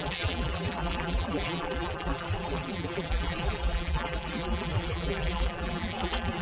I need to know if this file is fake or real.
fake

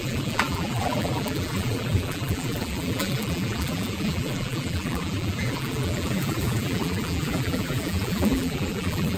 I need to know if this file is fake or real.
fake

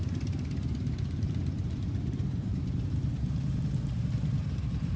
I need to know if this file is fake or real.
fake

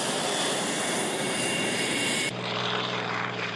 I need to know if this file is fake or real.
fake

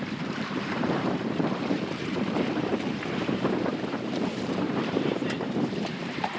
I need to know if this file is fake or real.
fake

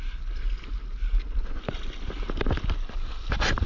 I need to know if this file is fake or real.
real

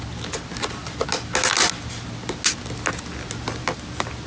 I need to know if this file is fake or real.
real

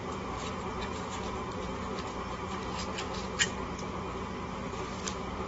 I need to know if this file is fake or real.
real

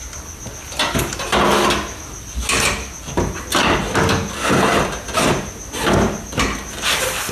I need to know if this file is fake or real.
real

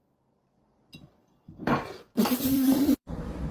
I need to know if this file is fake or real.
fake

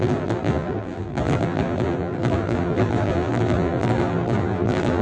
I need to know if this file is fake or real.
fake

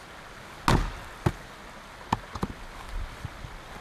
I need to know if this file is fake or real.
real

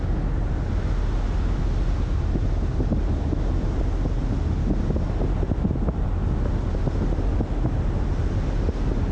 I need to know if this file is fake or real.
real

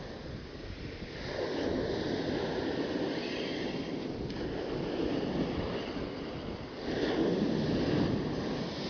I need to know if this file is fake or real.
real